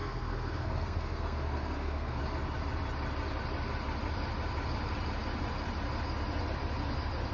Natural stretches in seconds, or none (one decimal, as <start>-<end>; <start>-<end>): 2.2-7.3